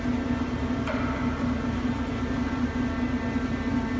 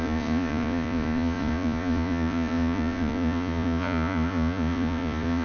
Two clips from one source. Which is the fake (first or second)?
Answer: second